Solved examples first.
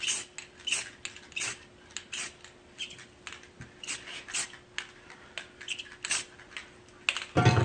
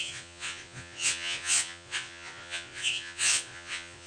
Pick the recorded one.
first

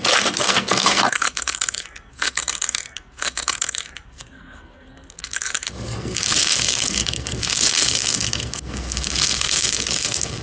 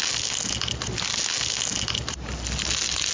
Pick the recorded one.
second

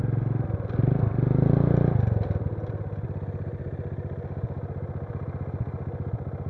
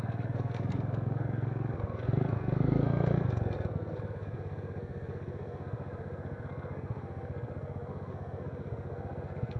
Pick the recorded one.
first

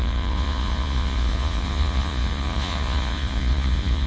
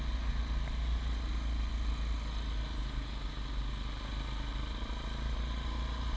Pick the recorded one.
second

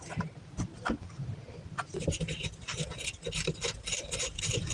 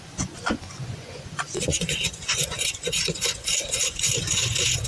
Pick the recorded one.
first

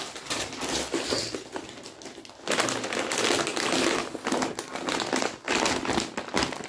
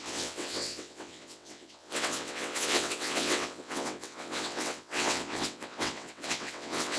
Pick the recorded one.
first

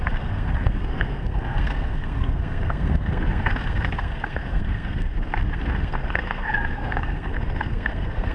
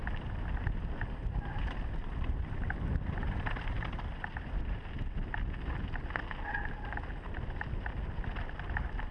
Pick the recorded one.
second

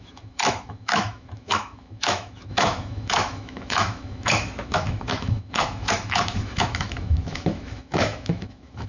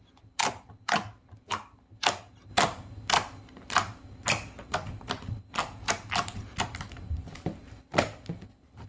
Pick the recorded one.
second